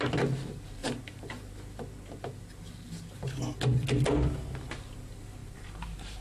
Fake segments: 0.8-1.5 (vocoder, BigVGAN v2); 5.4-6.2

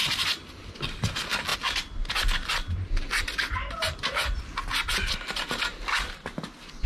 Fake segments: none